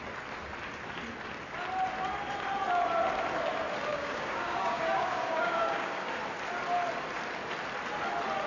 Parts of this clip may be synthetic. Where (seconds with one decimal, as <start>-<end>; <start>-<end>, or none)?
3.9-6.2